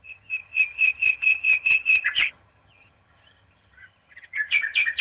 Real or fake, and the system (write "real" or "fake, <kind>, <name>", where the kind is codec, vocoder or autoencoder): fake, vocoder, HiFi-GAN